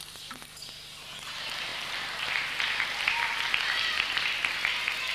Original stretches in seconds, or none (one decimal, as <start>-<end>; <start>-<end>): 0.0-5.1